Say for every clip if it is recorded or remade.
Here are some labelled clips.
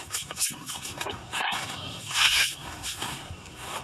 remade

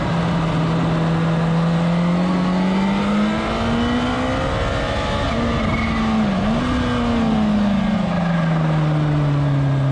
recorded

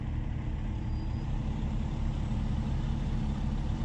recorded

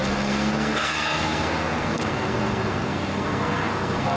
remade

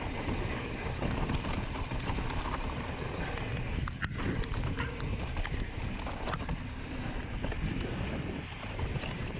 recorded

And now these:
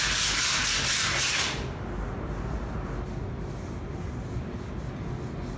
recorded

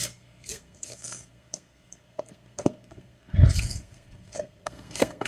remade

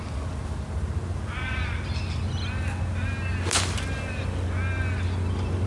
recorded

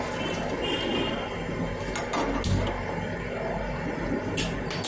recorded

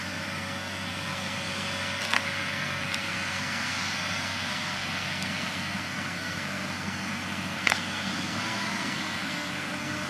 remade